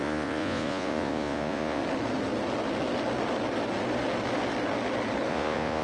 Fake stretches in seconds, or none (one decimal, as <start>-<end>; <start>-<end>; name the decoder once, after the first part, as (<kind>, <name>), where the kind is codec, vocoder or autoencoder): 0.0-1.8 (vocoder, Vocos); 5.3-5.8